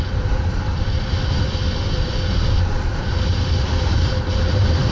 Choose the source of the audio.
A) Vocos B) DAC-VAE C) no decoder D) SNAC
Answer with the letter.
C